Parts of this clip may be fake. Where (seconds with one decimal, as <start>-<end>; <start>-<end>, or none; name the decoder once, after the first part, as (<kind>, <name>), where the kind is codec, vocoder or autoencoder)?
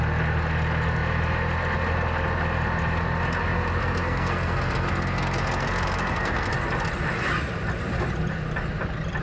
3.8-6.5 (codec, SNAC)